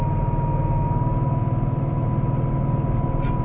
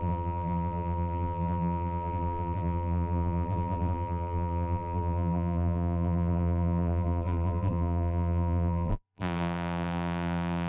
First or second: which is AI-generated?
second